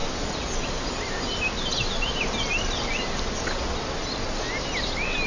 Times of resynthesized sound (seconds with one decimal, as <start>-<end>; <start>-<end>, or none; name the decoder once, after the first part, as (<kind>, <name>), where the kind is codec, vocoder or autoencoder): none